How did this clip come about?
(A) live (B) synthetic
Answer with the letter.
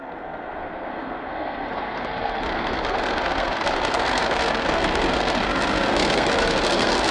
B